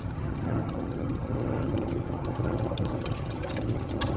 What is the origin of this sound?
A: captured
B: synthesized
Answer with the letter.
B